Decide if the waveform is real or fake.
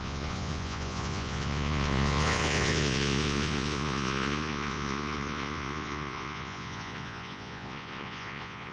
fake